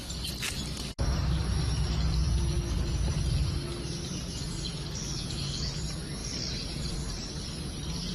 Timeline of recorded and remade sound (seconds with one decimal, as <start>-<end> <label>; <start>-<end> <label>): 0.0-8.1 recorded